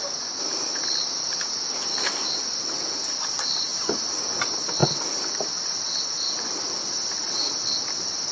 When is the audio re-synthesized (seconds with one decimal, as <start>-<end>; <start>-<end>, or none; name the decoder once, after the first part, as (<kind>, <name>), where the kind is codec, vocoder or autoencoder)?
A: none

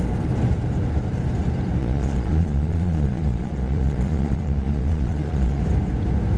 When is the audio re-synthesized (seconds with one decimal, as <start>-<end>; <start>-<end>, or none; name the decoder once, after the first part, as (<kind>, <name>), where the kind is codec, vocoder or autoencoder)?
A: 1.8-5.6 (vocoder, Vocos)

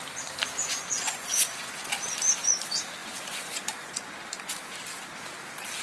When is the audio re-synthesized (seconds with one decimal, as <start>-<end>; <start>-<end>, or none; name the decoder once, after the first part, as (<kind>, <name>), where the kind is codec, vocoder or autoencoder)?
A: 0.6-1.7 (vocoder, Vocos); 3.0-4.1

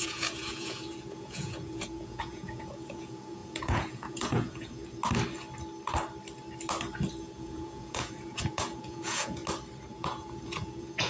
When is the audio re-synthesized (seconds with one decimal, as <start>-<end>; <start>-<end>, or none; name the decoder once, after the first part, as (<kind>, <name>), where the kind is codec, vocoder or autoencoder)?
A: 0.0-4.9 (vocoder, Vocos); 7.1-9.4; 9.9-11.1

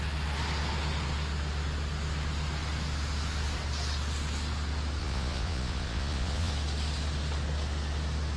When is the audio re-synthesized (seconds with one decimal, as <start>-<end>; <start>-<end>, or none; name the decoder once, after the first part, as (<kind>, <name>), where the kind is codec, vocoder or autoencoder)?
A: 5.0-6.5 (vocoder, Vocos)

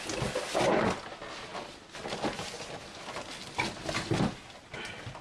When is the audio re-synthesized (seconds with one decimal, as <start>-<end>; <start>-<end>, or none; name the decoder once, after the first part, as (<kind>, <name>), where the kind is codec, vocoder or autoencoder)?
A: none

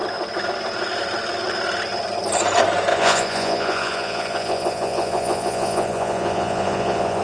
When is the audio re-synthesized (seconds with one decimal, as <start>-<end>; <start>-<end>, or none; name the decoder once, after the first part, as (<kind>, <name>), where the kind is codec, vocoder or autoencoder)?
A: 2.9-7.2 (vocoder, Vocos)